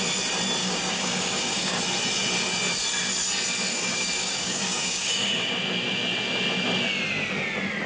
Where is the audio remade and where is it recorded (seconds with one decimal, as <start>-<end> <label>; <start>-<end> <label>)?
0.0-0.6 recorded; 0.6-1.8 remade; 1.8-3.7 recorded; 3.7-5.5 remade; 5.5-7.9 recorded

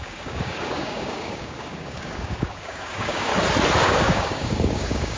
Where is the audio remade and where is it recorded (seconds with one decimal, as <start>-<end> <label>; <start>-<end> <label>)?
0.0-3.3 remade; 3.3-3.8 recorded; 3.8-5.2 remade

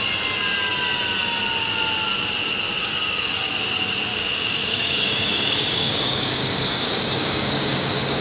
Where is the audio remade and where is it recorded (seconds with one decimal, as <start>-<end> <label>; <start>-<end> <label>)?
0.0-2.8 recorded; 2.8-3.5 remade; 3.5-4.1 recorded; 4.1-8.2 remade

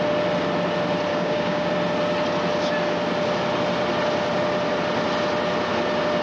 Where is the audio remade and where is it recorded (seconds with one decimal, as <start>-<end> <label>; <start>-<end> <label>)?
0.0-1.1 recorded; 1.1-1.7 remade; 1.7-6.2 recorded